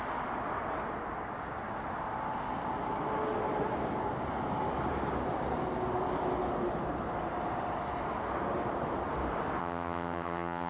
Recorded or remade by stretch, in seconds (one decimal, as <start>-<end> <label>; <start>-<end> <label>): 0.0-9.6 recorded; 9.6-10.7 remade